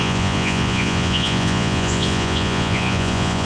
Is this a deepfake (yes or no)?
yes